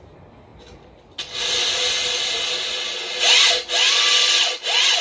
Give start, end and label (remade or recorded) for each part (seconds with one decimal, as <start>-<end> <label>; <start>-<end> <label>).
0.0-5.0 recorded